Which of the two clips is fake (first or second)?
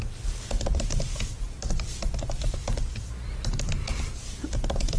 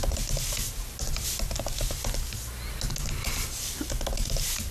first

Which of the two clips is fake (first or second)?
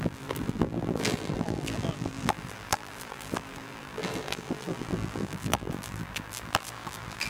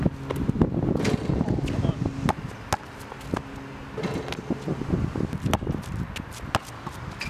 first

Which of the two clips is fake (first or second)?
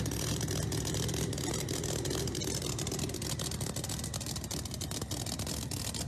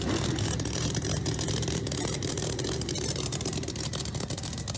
second